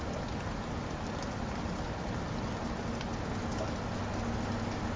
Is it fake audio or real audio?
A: real